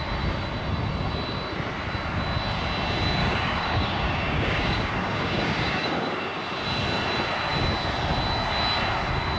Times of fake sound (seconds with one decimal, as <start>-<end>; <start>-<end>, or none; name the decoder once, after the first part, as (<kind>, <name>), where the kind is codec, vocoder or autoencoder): 3.2-6.4 (codec, DAC)